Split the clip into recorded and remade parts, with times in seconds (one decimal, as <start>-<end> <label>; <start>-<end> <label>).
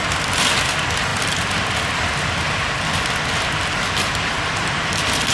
0.0-5.3 recorded